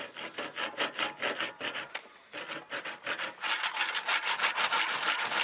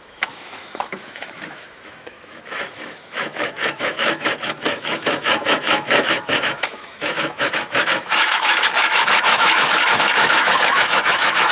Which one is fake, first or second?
second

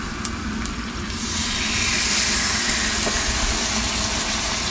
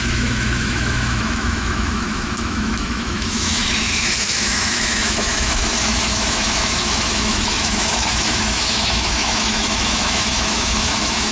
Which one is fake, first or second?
second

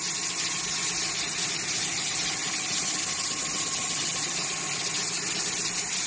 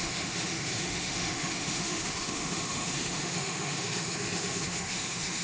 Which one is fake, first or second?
second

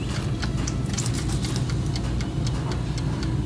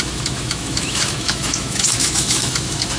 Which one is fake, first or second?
second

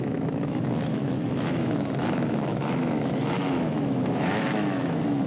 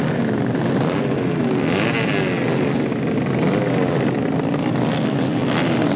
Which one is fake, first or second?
first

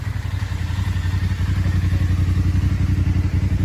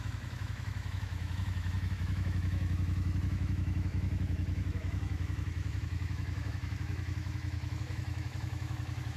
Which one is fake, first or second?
second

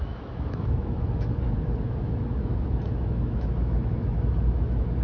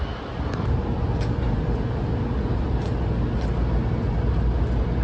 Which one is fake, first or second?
first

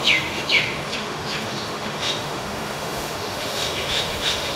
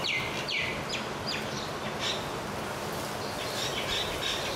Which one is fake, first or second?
first